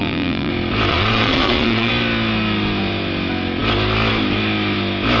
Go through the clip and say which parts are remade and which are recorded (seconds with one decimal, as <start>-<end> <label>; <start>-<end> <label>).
0.0-0.5 remade; 0.5-0.9 recorded; 0.9-1.9 remade; 1.9-5.2 recorded